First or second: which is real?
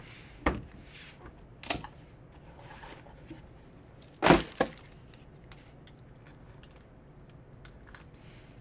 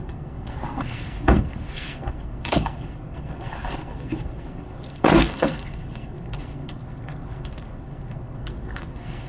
first